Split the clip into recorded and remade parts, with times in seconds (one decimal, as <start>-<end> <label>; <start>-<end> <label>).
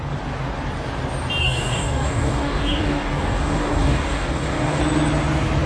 0.0-1.4 recorded; 1.4-4.8 remade; 4.8-5.7 recorded